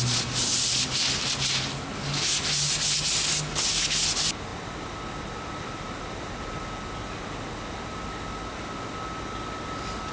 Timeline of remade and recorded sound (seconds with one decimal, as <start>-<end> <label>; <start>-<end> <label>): 0.0-10.1 recorded